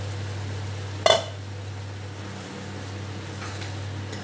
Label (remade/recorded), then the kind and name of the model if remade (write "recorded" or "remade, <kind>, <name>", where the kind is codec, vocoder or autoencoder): recorded